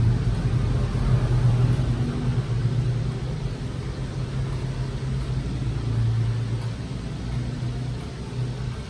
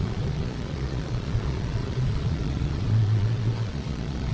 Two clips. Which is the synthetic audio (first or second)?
second